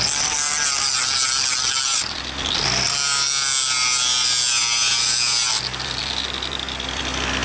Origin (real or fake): real